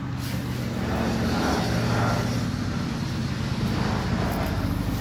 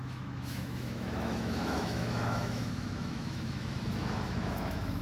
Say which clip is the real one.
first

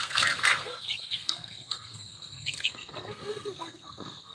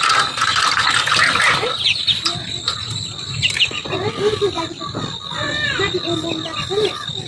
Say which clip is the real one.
second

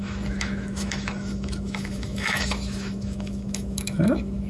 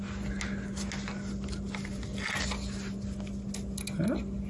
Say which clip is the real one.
second